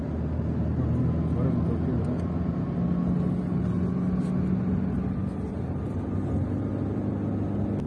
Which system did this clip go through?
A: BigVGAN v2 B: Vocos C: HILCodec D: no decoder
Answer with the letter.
D